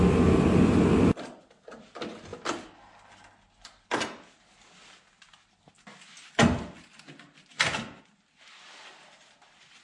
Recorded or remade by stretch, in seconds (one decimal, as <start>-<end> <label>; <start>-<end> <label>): 0.0-9.8 recorded